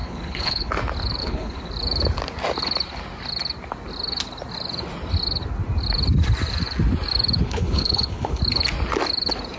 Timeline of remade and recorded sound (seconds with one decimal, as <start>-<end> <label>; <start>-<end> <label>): 0.0-0.7 remade; 0.7-1.2 recorded; 1.2-1.7 remade; 1.7-7.4 recorded; 7.4-8.4 remade; 8.4-9.6 recorded